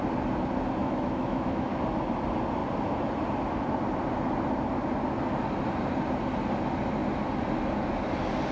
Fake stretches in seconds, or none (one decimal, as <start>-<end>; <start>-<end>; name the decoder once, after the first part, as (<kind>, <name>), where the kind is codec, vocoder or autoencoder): 0.8-1.8 (autoencoder, DAC-VAE)